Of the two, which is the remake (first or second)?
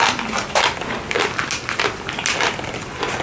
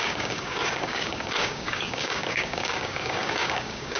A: second